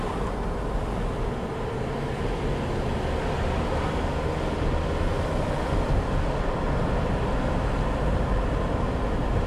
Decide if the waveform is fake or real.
real